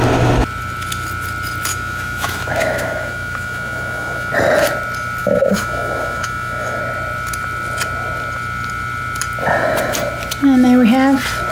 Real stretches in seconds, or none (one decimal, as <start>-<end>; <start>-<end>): 0.0-1.7; 4.3-5.2; 6.8-11.5